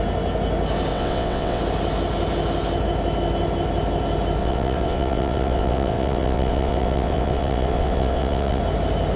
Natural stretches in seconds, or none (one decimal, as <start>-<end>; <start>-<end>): 0.0-0.9; 1.6-4.4; 8.6-9.2